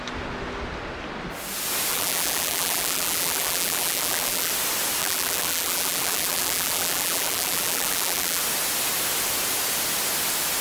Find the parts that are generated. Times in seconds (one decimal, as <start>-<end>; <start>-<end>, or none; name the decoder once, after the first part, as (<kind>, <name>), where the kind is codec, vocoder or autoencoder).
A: 1.9-4.5 (vocoder, BigVGAN v2); 5.0-8.4